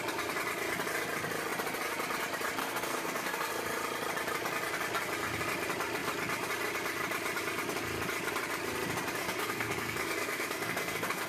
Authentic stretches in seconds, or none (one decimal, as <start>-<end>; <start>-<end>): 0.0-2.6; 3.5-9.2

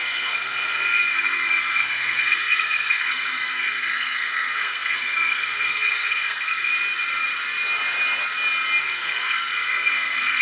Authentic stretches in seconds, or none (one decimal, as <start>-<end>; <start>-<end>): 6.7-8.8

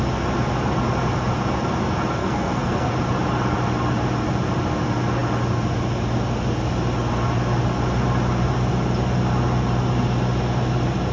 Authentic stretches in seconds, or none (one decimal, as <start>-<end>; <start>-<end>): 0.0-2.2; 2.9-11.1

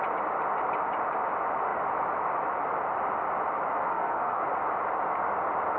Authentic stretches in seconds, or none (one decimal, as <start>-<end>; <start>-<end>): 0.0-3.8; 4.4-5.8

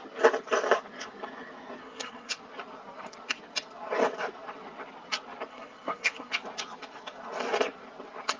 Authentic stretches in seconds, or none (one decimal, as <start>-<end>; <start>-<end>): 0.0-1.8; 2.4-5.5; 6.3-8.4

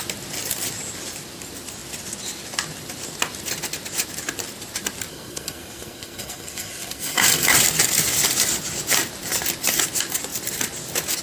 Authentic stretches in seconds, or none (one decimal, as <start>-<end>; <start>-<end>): 0.0-5.1; 7.5-11.2